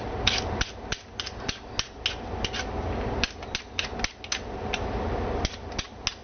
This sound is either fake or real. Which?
real